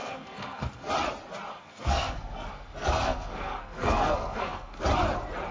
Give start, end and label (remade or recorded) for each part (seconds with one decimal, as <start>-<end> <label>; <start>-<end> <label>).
0.0-0.9 remade; 0.9-1.5 recorded; 1.5-4.8 remade; 4.8-5.5 recorded